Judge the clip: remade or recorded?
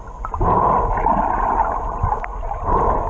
recorded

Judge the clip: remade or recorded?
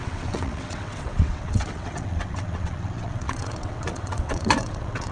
remade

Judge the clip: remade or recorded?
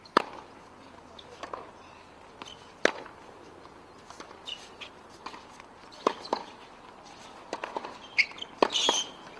recorded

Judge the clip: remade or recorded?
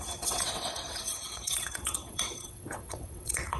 remade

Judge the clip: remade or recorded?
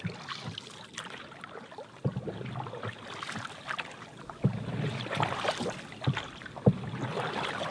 recorded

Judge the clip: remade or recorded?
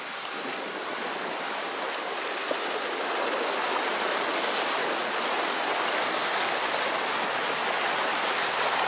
recorded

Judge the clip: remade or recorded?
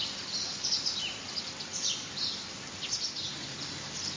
recorded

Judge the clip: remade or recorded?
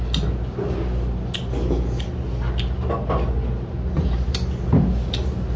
recorded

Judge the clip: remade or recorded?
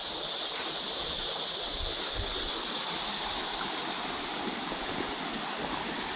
recorded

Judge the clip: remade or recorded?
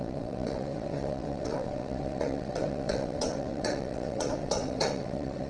remade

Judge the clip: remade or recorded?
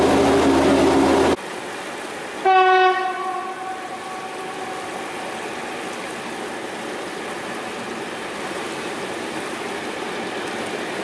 recorded